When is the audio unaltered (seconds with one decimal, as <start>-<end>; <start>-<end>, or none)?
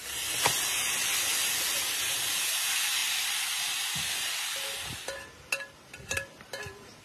0.0-7.0